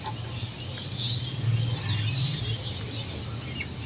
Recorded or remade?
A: recorded